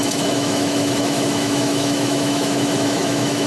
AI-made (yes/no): yes